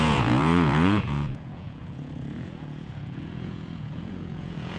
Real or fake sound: fake